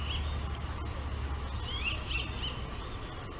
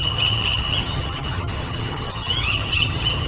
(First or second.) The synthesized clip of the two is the second